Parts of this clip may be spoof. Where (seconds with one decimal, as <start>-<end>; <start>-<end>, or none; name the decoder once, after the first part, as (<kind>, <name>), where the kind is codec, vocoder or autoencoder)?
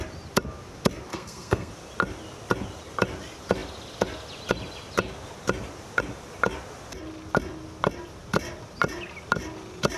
1.1-1.7 (codec, SNAC)